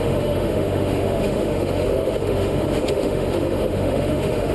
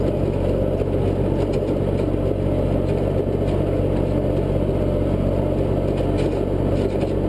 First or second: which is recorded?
second